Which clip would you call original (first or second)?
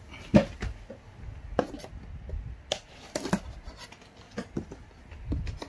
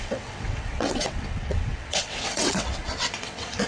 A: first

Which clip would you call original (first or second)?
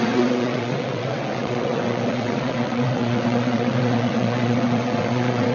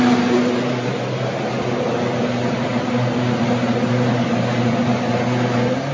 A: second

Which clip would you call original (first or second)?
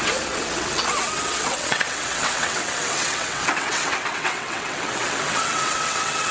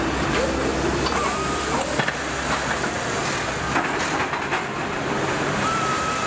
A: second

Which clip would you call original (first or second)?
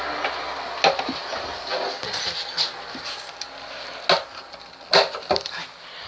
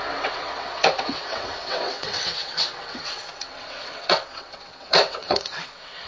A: first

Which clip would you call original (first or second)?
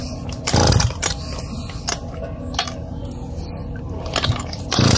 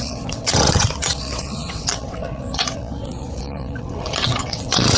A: first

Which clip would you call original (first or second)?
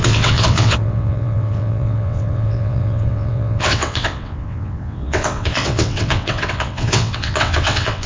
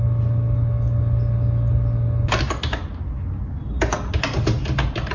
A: second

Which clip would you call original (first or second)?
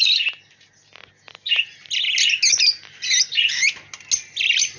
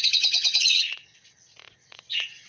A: first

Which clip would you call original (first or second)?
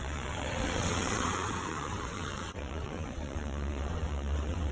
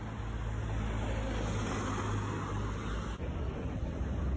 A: second